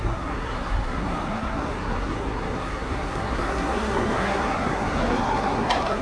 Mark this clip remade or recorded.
remade